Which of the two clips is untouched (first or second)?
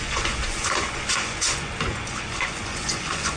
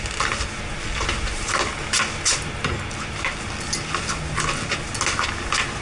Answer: second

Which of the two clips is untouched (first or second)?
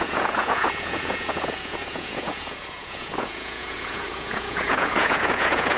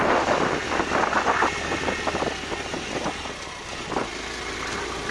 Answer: second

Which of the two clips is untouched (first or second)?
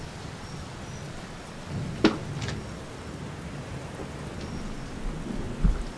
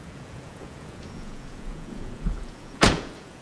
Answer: first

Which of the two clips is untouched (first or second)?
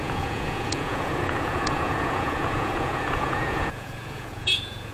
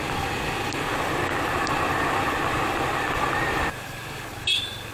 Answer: second